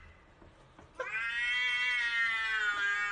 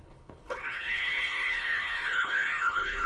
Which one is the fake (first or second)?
second